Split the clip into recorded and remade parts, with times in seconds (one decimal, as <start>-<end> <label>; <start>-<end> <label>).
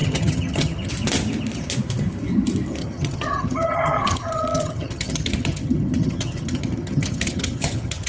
0.0-0.9 remade; 0.9-2.8 recorded; 2.8-8.1 remade